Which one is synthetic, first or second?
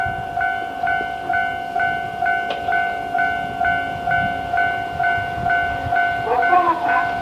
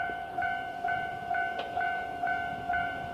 second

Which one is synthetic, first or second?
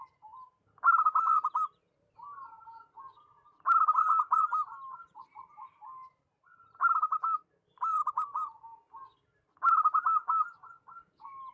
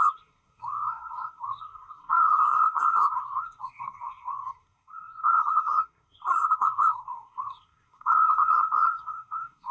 second